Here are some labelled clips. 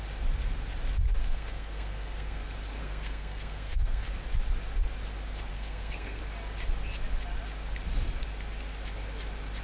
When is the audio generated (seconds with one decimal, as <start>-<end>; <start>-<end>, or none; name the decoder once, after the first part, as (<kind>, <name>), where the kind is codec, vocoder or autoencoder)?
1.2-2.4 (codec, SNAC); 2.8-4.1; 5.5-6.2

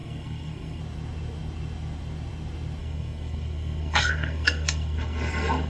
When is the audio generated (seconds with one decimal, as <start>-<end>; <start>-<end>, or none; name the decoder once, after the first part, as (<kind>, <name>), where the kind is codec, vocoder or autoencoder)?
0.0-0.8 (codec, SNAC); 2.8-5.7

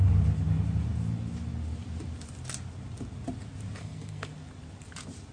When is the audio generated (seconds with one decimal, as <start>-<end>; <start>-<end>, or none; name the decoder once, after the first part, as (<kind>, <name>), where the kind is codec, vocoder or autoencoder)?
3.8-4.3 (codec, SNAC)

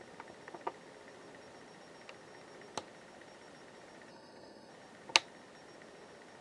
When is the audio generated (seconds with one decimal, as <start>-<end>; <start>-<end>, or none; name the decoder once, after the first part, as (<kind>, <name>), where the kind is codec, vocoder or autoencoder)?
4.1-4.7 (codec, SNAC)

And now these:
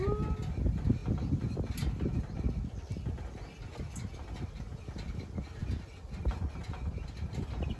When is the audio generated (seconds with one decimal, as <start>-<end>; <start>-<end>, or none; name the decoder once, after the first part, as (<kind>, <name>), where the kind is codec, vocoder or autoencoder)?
none

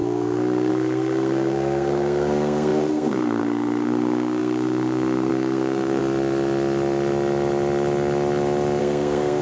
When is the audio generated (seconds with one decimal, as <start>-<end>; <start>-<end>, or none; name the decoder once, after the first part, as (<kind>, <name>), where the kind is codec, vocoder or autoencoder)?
0.0-6.0 (codec, SNAC); 8.8-9.4

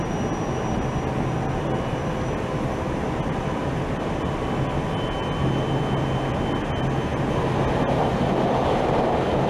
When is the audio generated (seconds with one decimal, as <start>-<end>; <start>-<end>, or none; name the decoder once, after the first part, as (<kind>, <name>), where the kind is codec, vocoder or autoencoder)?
none